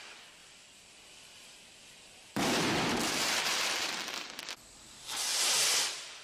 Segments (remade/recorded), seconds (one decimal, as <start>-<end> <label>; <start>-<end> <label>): 0.0-0.4 recorded; 0.4-3.9 remade; 3.9-6.2 recorded